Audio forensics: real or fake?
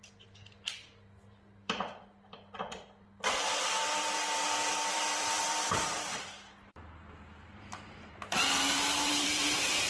fake